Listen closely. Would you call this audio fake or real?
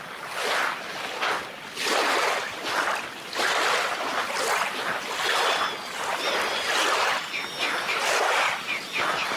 real